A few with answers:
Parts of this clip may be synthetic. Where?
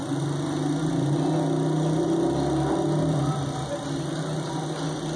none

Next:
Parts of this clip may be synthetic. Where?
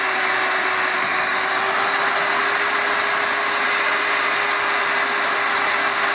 none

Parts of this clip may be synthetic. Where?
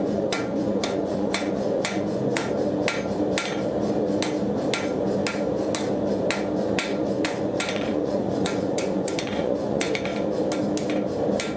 0.0-2.4 (vocoder, Vocos); 6.6-10.1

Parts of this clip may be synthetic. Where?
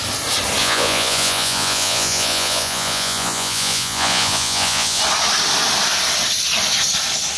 0.6-5.0 (vocoder, Vocos)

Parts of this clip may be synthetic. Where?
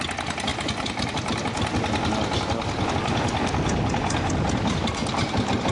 none